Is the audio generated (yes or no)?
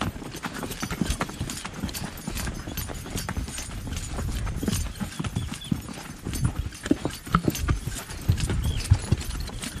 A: no